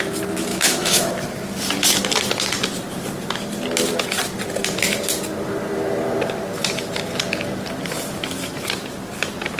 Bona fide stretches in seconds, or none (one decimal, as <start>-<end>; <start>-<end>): 0.0-0.5; 1.1-9.6